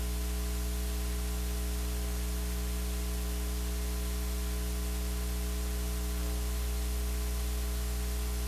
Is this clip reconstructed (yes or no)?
no